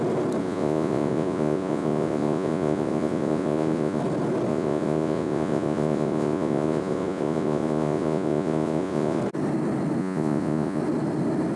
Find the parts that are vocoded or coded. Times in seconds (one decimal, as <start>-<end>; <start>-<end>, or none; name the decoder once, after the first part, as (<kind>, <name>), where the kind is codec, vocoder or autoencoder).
0.4-4.0 (vocoder, Vocos); 4.5-9.2; 10.0-10.8